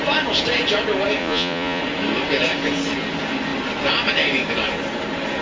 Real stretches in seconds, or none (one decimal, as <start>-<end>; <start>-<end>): 0.0-1.2; 1.8-5.4